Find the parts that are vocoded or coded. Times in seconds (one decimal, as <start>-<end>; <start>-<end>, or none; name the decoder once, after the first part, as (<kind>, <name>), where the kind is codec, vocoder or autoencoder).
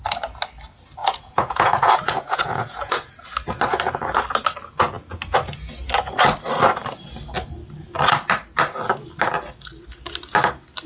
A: 1.0-3.1 (vocoder, Vocos)